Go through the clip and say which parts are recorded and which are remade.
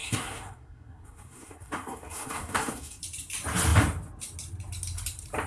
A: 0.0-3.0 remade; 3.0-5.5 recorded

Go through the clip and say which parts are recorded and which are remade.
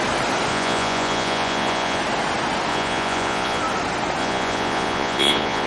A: 0.0-0.5 recorded; 0.5-2.0 remade; 2.0-2.7 recorded; 2.7-3.6 remade; 3.6-4.2 recorded; 4.2-5.7 remade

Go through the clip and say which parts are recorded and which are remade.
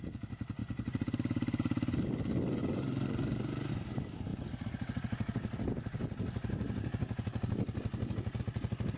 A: 0.0-9.0 recorded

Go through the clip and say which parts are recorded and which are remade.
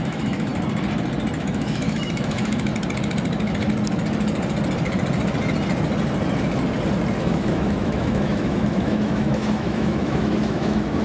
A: 0.0-0.5 remade; 0.5-1.4 recorded; 1.4-2.7 remade; 2.7-7.2 recorded; 7.2-11.0 remade